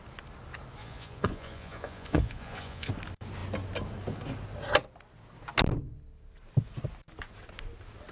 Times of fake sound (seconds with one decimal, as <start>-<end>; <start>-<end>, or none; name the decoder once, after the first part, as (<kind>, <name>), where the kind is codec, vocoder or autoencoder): 0.8-2.9 (vocoder, Vocos)